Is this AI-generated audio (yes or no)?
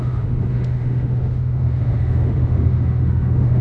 yes